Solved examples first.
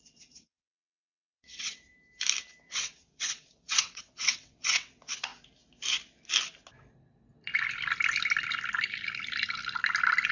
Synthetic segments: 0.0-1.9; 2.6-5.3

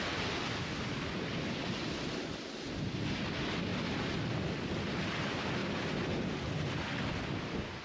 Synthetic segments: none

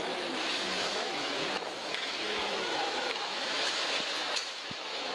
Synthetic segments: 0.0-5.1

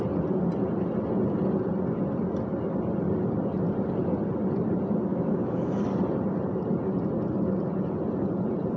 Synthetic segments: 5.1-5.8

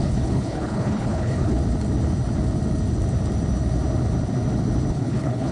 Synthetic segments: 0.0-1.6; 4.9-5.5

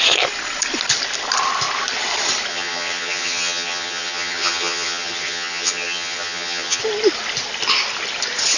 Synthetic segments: 2.5-6.8

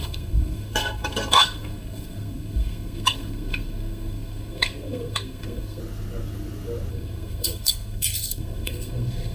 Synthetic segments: 0.0-5.8; 6.9-9.3

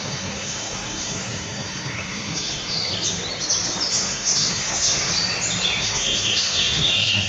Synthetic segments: 0.0-2.9; 3.9-5.1; 5.8-7.3